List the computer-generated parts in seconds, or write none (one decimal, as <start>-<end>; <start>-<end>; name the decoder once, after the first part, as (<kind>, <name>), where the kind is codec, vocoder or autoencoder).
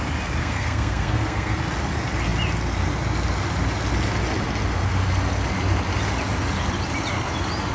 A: 0.4-1.6 (codec, SNAC)